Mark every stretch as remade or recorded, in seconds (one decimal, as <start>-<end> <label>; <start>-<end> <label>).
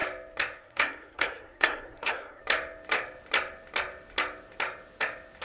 0.0-0.6 recorded; 0.6-2.4 remade; 2.4-5.4 recorded